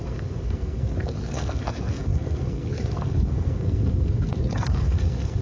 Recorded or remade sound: remade